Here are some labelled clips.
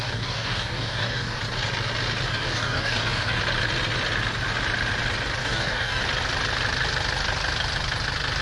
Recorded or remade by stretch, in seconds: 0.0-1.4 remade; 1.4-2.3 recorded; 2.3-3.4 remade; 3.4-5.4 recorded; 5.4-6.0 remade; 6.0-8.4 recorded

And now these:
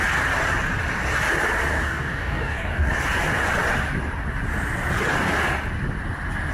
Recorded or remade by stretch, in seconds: 0.0-1.7 recorded; 1.7-2.9 remade; 2.9-6.5 recorded

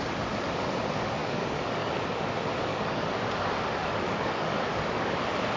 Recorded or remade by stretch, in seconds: 0.0-1.2 recorded; 1.2-1.9 remade; 1.9-2.7 recorded; 2.7-3.3 remade; 3.3-3.8 recorded; 3.8-5.1 remade; 5.1-5.6 recorded